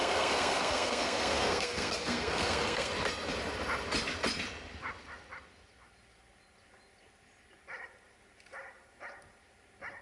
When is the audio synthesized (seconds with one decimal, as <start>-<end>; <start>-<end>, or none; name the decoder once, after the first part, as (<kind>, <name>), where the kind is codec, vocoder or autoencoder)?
0.0-2.9 (codec, SNAC)